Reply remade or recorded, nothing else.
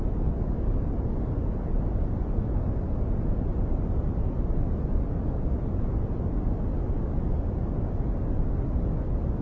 recorded